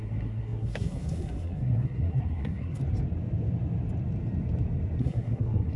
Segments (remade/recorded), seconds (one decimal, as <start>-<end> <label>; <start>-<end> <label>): 0.0-2.8 remade; 2.8-5.0 recorded; 5.0-5.8 remade